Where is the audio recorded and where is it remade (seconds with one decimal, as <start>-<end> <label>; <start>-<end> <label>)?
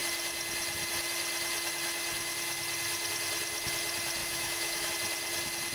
0.0-4.2 recorded; 4.2-4.9 remade; 4.9-5.7 recorded